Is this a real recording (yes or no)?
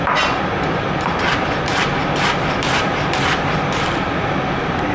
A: yes